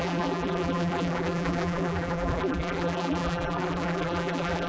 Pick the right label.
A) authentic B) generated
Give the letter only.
B